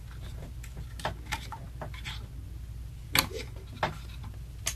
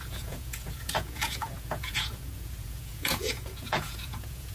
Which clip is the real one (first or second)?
first